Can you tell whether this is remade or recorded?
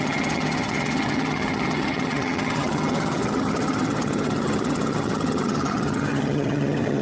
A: remade